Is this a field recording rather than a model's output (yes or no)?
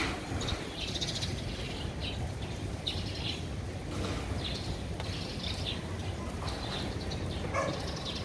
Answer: yes